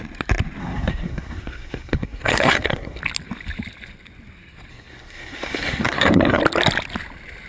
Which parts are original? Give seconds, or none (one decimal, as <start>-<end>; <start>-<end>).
0.0-0.6; 3.0-4.7; 6.4-7.5